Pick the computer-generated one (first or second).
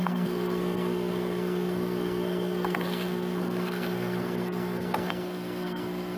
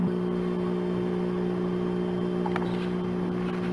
first